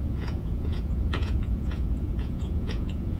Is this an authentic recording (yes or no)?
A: no